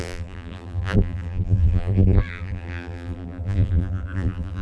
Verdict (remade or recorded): remade